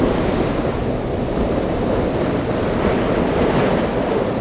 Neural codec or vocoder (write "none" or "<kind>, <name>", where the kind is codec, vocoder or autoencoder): none